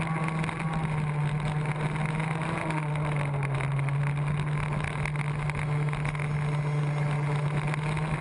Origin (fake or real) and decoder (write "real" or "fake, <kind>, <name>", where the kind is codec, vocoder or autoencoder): real